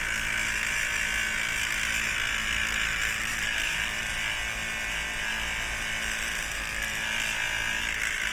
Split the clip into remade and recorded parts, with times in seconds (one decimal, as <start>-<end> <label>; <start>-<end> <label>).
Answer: 0.0-2.6 recorded; 2.6-4.0 remade; 4.0-8.3 recorded